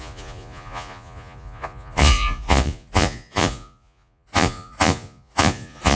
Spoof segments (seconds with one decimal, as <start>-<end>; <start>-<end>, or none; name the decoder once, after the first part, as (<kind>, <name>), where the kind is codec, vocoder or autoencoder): 0.0-6.0 (vocoder, Vocos)